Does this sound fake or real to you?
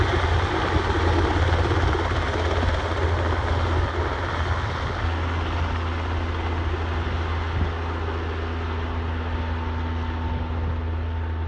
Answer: real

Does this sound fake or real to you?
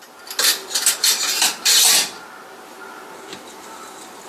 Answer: real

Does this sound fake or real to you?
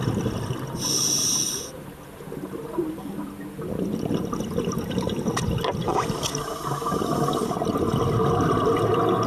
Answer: real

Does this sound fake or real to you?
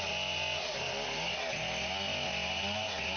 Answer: real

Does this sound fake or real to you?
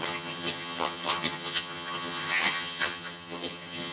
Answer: fake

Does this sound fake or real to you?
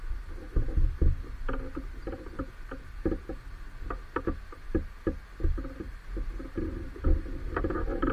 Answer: real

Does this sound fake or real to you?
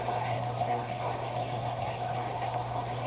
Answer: fake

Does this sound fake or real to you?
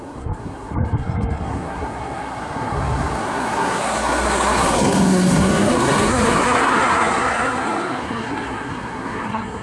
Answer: fake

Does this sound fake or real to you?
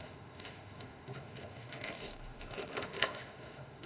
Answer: fake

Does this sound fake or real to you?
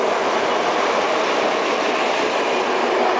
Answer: real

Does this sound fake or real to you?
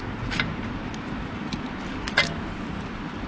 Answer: real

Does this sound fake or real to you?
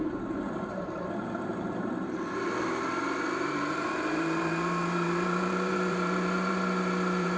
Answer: fake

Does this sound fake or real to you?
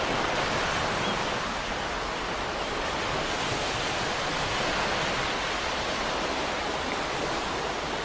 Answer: real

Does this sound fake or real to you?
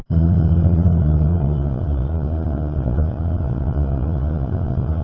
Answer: fake